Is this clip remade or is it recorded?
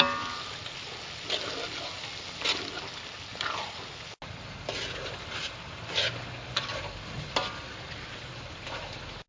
recorded